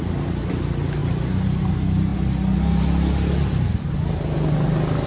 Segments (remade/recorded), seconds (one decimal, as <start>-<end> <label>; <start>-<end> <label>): 0.0-5.1 recorded